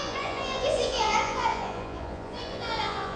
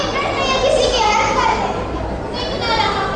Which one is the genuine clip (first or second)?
second